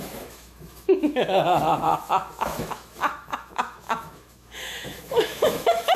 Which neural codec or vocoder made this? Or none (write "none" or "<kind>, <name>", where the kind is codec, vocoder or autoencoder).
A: autoencoder, DAC-VAE